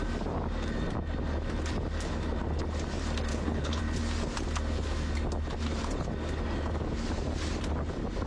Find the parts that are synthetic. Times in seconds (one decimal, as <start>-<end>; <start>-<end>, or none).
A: 3.3-3.8